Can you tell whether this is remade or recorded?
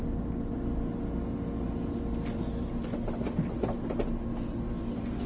recorded